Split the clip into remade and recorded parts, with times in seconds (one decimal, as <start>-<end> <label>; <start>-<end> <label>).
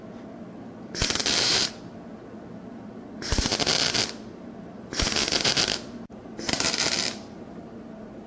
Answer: 0.0-1.2 recorded; 1.2-1.7 remade; 1.7-5.2 recorded; 5.2-7.7 remade; 7.7-8.3 recorded